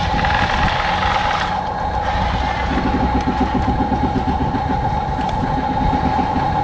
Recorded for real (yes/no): yes